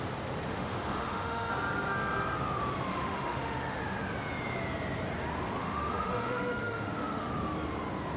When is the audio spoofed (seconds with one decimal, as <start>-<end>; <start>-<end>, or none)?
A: 0.5-1.5; 2.9-3.8; 5.6-7.3